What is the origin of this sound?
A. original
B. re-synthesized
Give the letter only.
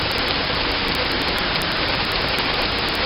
B